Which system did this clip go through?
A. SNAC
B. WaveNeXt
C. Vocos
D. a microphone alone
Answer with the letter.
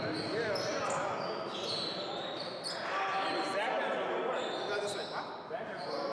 D